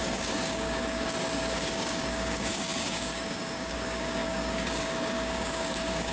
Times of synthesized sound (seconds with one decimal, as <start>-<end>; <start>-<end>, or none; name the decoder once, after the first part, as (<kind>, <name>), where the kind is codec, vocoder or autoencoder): 0.0-6.1 (codec, DAC)